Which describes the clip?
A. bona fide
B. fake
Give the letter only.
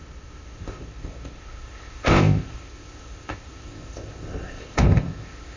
B